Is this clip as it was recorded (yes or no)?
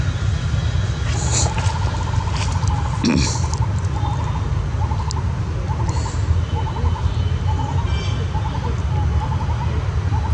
yes